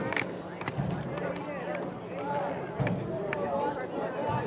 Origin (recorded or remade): recorded